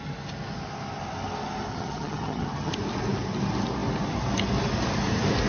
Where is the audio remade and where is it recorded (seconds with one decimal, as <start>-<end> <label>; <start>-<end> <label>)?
0.0-1.7 recorded; 1.7-2.7 remade; 2.7-5.5 recorded